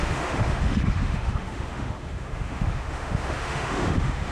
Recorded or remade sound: remade